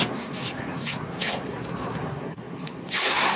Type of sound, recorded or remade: remade